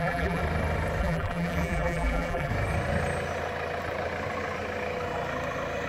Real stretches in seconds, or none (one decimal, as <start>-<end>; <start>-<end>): 0.4-1.0; 2.5-5.9

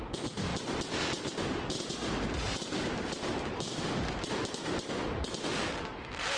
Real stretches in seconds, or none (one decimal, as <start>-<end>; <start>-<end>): 0.0-0.5; 4.3-6.4

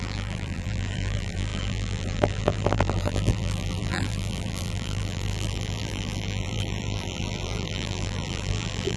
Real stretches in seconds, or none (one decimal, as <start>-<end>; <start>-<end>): none